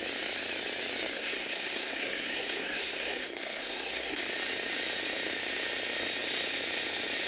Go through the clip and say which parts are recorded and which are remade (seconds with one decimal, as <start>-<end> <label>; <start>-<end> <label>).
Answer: 0.0-1.1 recorded; 1.1-4.2 remade; 4.2-7.3 recorded